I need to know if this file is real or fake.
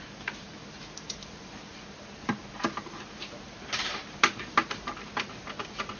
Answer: fake